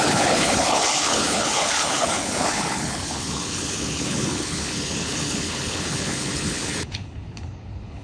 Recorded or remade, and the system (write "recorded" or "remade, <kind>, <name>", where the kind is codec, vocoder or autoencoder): remade, codec, HILCodec